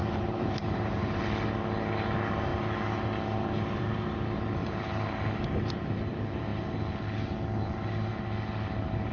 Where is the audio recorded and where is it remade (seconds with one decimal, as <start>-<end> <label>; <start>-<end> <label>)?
0.0-1.2 remade; 1.2-9.1 recorded